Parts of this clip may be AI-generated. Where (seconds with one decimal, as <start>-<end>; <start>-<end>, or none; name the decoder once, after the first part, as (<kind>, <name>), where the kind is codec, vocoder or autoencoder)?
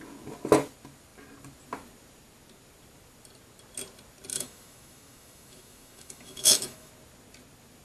4.3-6.9 (autoencoder, DAC-VAE)